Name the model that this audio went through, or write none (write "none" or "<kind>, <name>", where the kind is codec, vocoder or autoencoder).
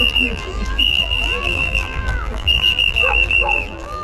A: vocoder, BigVGAN v2